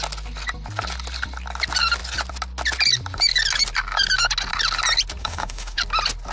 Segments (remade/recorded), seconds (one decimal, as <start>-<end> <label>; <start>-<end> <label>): 0.0-5.2 recorded; 5.2-5.8 remade; 5.8-6.3 recorded

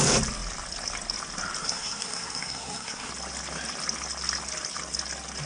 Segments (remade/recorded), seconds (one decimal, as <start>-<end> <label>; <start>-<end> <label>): 0.0-1.6 recorded; 1.6-3.1 remade; 3.1-5.5 recorded

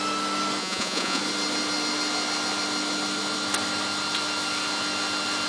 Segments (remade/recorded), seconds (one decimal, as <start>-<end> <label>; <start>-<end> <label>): 0.0-0.6 recorded; 0.6-1.2 remade; 1.2-5.5 recorded

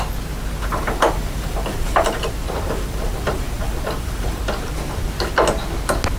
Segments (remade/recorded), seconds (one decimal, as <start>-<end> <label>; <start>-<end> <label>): 0.0-0.7 recorded; 0.7-4.4 remade; 4.4-6.2 recorded

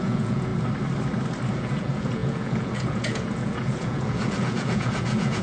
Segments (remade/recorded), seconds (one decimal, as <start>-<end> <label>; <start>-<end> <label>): 0.0-0.5 remade; 0.5-1.5 recorded; 1.5-5.4 remade

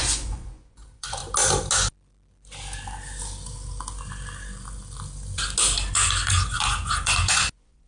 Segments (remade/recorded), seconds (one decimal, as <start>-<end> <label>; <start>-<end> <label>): 0.0-1.2 remade; 1.2-5.9 recorded; 5.9-7.9 remade